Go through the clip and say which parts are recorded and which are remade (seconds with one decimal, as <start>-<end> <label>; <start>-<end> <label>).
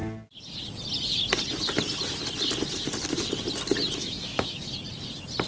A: 0.0-4.0 recorded; 4.0-4.7 remade; 4.7-5.5 recorded